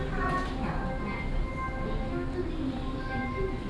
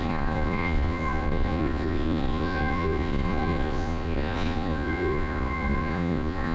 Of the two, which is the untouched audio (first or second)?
first